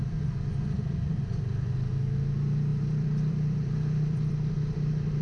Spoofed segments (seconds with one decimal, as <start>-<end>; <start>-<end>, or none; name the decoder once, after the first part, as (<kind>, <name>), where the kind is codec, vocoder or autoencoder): 2.7-4.3 (vocoder, BigVGAN v2)